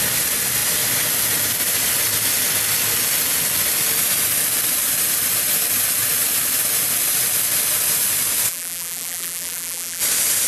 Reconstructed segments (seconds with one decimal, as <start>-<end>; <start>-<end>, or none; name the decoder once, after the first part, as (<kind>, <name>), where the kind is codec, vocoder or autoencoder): 8.5-10.0 (vocoder, BigVGAN v2)

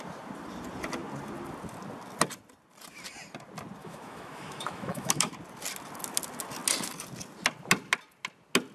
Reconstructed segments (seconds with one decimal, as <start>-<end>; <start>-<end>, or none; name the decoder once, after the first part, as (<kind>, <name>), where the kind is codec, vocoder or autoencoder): 3.8-5.3 (autoencoder, DAC-VAE)

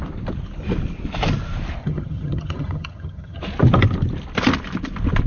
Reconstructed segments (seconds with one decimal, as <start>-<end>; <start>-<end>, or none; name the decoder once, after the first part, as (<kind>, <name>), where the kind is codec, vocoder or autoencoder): 1.8-3.4 (vocoder, HiFi-GAN)

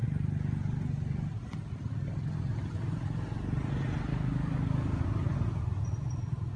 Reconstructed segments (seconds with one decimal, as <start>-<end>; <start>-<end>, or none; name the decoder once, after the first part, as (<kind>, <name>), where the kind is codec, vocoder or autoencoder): 4.1-5.0 (codec, DAC)

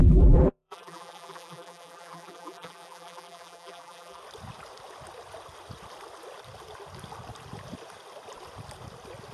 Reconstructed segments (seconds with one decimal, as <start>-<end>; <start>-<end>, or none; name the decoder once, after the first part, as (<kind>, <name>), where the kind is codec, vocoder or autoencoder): 0.0-4.2 (vocoder, BigVGAN v2)